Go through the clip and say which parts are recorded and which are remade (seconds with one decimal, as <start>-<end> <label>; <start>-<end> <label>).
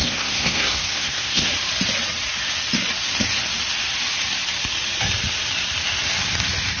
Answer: 0.0-1.5 remade; 1.5-6.8 recorded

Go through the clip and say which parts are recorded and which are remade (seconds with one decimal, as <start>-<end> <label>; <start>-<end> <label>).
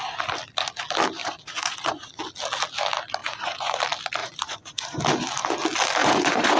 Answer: 0.0-1.2 recorded; 1.2-2.2 remade; 2.2-3.2 recorded; 3.2-3.8 remade; 3.8-4.2 recorded; 4.2-5.0 remade; 5.0-6.0 recorded; 6.0-6.6 remade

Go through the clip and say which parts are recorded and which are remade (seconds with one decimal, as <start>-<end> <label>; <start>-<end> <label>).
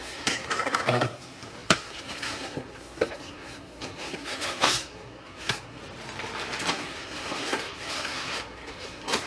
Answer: 0.0-5.8 remade; 5.8-6.7 recorded; 6.7-9.3 remade